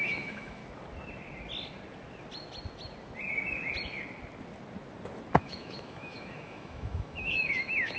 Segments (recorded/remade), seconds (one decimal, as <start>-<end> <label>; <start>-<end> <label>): 0.0-0.6 remade; 0.6-5.4 recorded; 5.4-8.0 remade

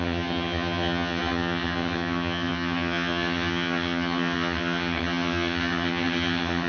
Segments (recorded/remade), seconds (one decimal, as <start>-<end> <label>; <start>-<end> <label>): 0.0-6.7 remade

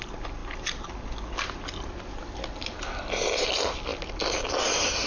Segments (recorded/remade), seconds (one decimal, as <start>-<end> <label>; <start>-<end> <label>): 0.0-5.1 recorded

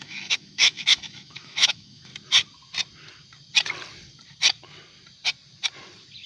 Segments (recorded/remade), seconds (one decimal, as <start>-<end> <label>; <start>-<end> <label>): 0.0-2.1 remade; 2.1-6.3 recorded

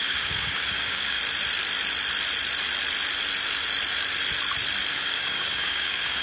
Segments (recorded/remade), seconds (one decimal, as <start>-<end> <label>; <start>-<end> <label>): 0.0-1.2 remade; 1.2-4.9 recorded; 4.9-6.2 remade

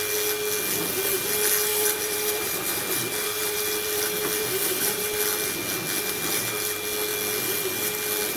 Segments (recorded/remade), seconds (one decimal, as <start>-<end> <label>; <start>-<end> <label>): 0.0-1.7 recorded; 1.7-5.2 remade; 5.2-8.4 recorded

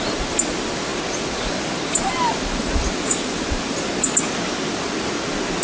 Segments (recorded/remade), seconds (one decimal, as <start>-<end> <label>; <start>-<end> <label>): 0.0-2.6 recorded; 2.6-3.9 remade; 3.9-5.6 recorded

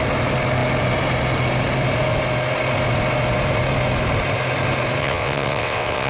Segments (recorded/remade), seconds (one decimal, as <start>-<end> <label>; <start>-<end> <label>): 0.0-5.0 recorded; 5.0-6.1 remade